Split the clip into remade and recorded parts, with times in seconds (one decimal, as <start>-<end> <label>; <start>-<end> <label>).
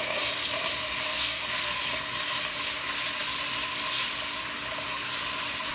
0.0-1.1 recorded; 1.1-1.8 remade; 1.8-5.7 recorded